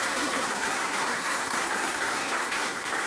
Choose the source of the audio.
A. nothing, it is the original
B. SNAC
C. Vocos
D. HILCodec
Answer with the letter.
B